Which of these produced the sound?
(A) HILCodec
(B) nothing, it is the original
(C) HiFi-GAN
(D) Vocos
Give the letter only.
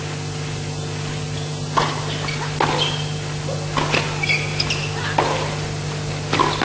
B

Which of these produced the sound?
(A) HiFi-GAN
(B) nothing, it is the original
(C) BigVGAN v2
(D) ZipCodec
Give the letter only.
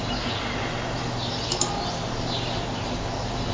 B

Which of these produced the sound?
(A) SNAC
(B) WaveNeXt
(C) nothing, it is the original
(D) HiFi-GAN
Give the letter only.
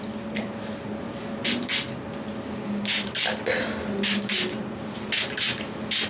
C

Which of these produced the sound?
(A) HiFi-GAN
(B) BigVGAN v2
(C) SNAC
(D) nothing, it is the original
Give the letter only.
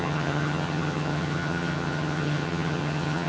A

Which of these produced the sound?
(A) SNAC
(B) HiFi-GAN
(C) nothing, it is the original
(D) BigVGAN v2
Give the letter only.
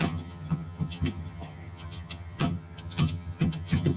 B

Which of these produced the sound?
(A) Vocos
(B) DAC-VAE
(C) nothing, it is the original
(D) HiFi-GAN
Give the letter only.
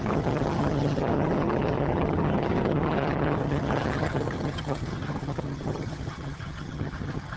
D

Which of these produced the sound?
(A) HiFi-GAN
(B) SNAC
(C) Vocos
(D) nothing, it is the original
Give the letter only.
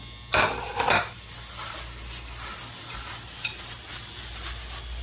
D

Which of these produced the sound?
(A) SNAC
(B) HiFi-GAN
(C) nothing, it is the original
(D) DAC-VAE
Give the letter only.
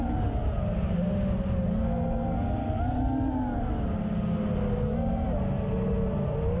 C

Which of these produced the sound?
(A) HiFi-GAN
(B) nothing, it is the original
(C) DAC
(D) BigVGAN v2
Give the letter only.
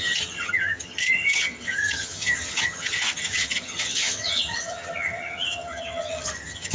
A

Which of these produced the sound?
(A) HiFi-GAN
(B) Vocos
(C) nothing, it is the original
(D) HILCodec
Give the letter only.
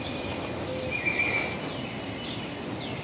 C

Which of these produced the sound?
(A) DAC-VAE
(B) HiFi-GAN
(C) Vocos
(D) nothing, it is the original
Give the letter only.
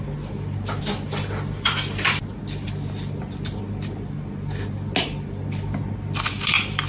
D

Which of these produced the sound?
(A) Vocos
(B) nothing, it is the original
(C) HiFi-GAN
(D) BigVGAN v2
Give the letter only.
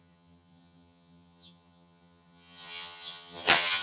C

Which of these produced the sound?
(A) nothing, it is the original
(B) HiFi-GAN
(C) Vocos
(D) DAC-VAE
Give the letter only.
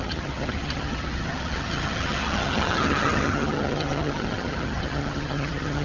B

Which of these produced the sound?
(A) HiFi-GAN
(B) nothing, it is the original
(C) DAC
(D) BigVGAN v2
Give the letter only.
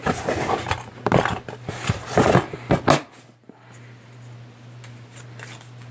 B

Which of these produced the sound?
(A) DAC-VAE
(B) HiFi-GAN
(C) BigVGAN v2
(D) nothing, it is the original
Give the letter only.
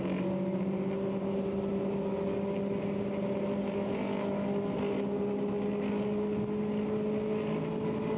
D